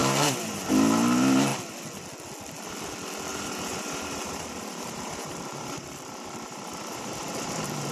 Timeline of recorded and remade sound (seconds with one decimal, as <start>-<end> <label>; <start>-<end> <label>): 0.0-0.7 remade; 0.7-3.3 recorded; 3.3-7.9 remade